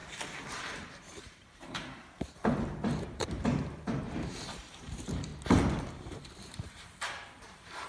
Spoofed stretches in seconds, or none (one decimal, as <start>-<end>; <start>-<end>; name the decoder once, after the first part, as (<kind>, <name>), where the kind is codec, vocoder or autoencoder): 0.5-5.3 (vocoder, BigVGAN v2); 5.8-7.9